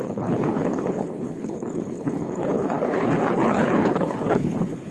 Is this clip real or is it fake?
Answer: fake